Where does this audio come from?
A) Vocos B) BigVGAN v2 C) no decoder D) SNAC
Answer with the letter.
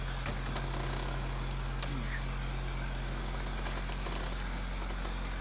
C